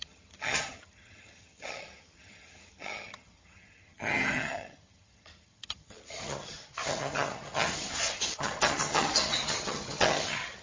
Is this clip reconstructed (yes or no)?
yes